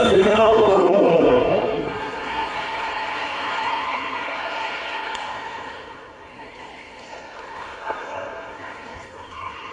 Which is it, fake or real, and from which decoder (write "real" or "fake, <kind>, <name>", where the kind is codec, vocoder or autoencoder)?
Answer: fake, codec, SNAC